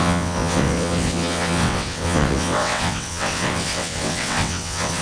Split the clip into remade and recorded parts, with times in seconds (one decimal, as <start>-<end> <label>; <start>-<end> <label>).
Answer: 0.0-5.0 remade